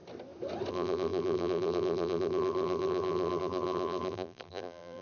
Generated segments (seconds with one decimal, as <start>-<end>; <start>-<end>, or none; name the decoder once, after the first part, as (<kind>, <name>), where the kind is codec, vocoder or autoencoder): 0.7-5.0 (vocoder, BigVGAN v2)